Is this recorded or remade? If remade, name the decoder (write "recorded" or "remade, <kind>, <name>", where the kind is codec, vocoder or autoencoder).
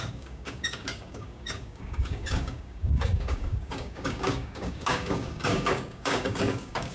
remade, codec, DAC